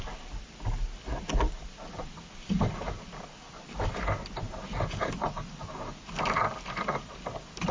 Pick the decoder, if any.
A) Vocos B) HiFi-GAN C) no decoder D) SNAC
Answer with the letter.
C